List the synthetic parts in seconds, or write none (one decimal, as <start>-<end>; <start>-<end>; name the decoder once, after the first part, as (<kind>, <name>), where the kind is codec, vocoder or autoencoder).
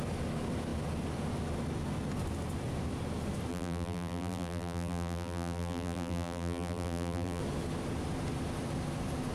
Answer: 3.5-7.4 (vocoder, BigVGAN v2)